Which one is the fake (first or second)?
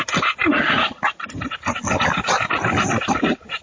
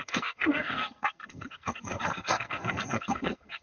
second